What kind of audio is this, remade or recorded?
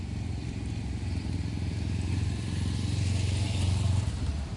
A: recorded